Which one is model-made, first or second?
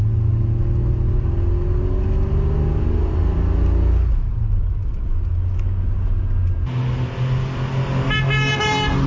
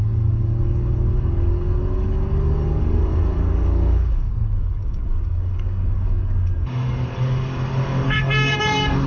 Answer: second